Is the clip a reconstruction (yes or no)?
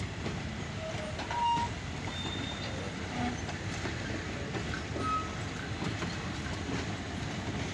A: no